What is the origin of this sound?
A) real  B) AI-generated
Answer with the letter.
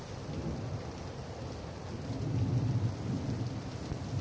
A